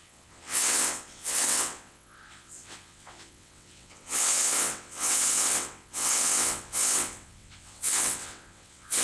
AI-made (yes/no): yes